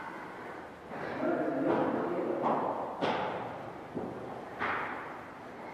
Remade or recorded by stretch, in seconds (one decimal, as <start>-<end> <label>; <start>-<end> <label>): 0.0-5.7 recorded